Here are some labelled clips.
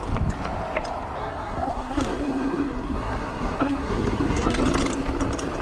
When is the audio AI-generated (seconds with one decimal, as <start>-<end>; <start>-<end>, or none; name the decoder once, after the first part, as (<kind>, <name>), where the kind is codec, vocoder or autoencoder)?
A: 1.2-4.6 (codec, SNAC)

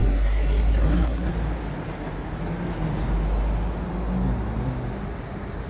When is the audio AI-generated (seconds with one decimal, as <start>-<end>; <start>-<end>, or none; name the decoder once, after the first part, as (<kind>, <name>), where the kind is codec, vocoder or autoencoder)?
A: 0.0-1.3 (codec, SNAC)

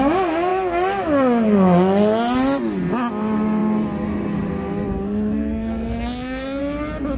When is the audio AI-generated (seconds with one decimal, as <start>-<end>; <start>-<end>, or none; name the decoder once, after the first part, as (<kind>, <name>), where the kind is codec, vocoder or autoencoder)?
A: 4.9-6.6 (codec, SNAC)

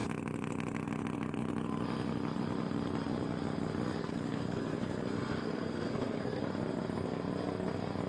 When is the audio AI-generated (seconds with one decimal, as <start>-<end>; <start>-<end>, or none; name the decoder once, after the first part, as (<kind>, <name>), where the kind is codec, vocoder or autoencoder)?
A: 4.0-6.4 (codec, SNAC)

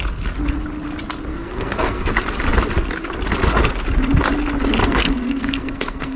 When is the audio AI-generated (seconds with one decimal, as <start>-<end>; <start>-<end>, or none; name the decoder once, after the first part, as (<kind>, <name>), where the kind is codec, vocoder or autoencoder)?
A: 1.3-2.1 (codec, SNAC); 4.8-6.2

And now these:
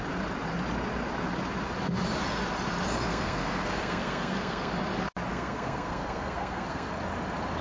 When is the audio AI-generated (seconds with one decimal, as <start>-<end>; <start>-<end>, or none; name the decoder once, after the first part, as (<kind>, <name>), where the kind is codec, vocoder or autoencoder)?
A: 3.1-4.7 (codec, SNAC); 5.3-6.9

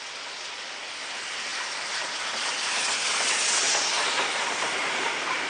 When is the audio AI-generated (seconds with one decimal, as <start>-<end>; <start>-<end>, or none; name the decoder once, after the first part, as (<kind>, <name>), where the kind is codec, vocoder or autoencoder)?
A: none

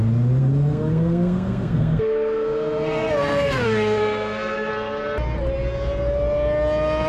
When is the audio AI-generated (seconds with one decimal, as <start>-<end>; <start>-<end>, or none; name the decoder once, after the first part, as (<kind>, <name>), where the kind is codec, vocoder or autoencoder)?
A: 0.4-4.7 (codec, SNAC)